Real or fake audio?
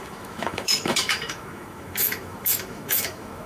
fake